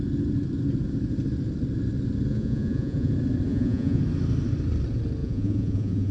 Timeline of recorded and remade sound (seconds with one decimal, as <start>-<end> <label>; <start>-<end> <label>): 0.0-2.3 recorded; 2.3-3.1 remade; 3.1-3.5 recorded; 3.5-4.0 remade; 4.0-5.2 recorded; 5.2-6.1 remade